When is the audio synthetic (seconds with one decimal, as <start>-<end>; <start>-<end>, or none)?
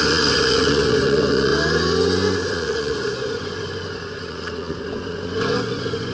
0.0-1.5; 2.5-6.1